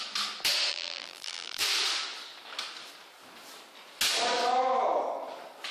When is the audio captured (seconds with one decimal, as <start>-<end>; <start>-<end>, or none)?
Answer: 0.0-0.7; 1.6-5.7